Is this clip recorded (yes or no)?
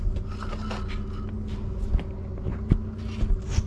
yes